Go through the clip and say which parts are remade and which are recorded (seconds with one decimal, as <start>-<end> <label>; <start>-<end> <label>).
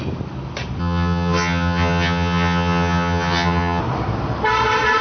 0.0-0.8 recorded; 0.8-3.8 remade; 3.8-5.0 recorded